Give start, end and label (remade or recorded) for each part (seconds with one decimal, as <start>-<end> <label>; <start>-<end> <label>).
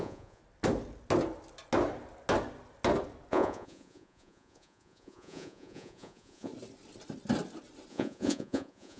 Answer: 0.0-0.4 remade; 0.4-3.3 recorded; 3.3-6.5 remade; 6.5-7.9 recorded; 7.9-9.0 remade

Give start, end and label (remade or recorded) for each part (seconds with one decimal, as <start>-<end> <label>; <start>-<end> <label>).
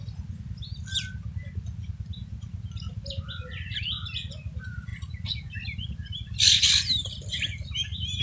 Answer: 0.0-4.9 recorded; 4.9-8.2 remade